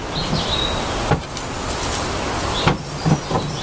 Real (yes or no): yes